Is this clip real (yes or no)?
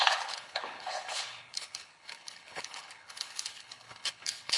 no